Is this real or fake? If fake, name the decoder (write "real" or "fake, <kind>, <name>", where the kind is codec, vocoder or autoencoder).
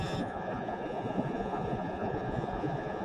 fake, vocoder, Vocos